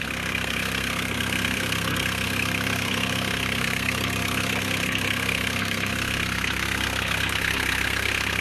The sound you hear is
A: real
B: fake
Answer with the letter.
B